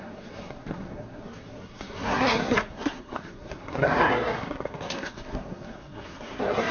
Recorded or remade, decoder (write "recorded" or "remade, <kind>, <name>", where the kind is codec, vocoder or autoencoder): remade, codec, SNAC